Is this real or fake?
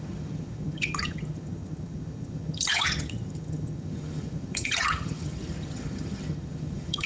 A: fake